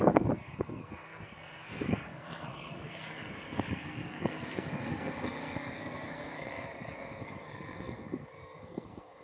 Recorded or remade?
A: remade